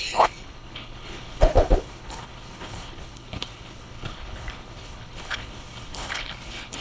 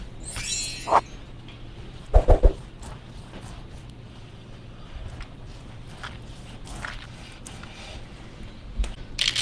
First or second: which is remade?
first